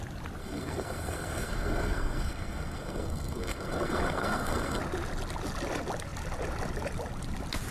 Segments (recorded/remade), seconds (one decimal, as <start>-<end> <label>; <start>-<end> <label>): 0.0-0.4 recorded; 0.4-4.8 remade; 4.8-7.7 recorded